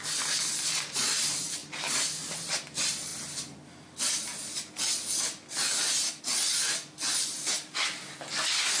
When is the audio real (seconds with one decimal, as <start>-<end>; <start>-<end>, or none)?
3.1-6.2

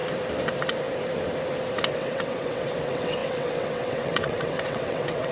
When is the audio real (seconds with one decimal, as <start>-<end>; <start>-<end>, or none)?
0.0-1.9

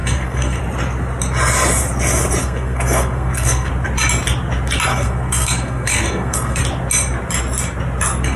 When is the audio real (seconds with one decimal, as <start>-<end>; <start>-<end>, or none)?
0.6-2.4; 3.7-4.9; 6.6-8.4

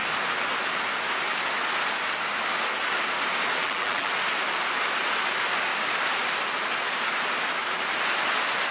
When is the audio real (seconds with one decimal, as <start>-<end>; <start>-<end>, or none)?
0.0-3.6; 4.1-8.7

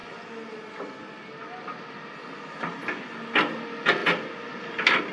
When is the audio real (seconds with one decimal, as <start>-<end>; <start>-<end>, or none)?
0.0-5.1